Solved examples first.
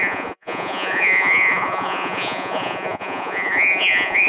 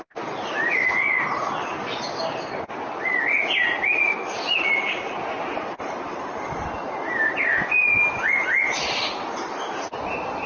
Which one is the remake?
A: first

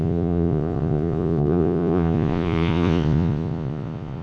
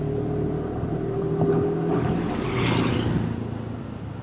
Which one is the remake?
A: first